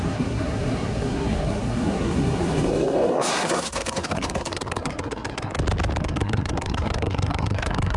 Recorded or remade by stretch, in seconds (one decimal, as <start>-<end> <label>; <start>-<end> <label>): 0.0-5.5 remade; 5.5-6.0 recorded; 6.0-8.0 remade